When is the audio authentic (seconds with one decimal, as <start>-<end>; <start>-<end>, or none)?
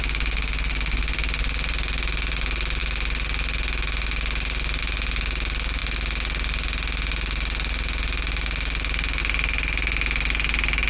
0.0-10.9